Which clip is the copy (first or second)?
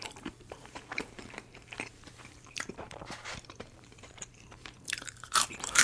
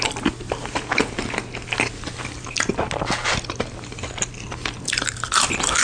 first